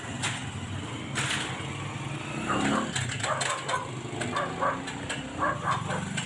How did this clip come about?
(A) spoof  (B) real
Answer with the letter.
B